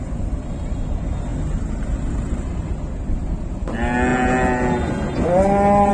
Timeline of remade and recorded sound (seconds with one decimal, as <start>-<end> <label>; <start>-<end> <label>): 0.0-5.9 recorded